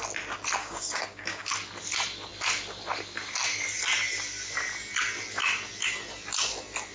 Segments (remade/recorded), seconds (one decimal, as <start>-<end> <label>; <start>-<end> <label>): 0.0-0.6 recorded; 0.6-1.5 remade; 1.5-6.9 recorded